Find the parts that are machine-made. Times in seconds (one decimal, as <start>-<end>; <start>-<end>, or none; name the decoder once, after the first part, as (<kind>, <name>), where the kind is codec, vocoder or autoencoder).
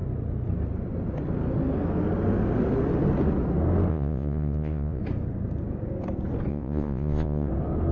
3.9-5.0 (vocoder, Vocos); 6.5-7.5